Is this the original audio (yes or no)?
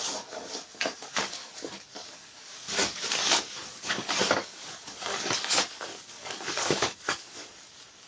no